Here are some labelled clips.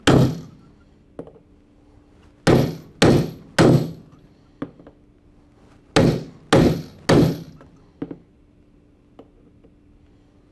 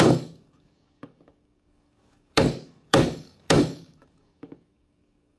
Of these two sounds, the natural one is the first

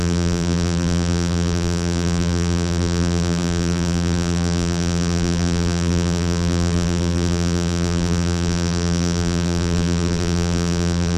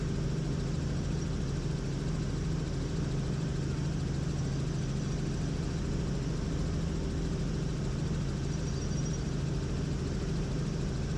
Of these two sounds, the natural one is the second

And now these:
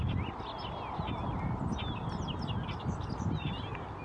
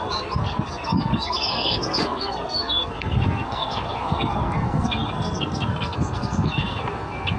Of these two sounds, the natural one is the first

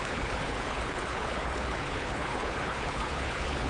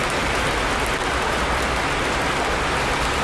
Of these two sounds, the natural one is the second